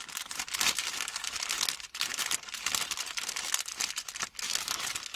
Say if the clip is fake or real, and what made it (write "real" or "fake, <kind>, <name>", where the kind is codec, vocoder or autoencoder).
real